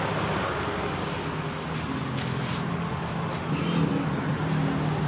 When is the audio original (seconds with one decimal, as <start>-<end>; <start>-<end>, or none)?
0.0-2.8; 3.5-5.1